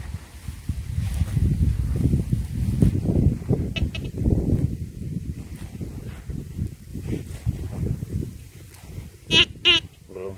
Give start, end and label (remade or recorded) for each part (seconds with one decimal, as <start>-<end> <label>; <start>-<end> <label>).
0.0-10.4 recorded